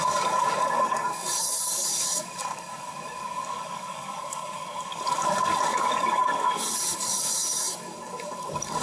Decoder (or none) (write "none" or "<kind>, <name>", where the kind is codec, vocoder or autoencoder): codec, DAC